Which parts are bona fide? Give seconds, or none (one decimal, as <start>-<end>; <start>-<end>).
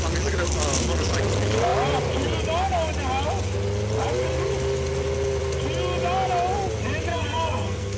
0.0-7.1